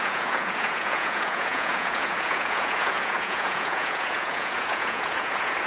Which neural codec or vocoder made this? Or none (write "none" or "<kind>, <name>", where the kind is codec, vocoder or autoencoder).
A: vocoder, Vocos